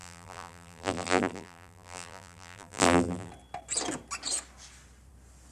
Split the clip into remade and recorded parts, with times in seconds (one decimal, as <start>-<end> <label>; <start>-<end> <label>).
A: 0.0-3.3 remade; 3.3-5.5 recorded